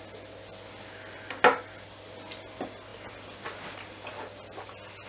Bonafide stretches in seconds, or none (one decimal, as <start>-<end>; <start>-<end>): 0.0-5.1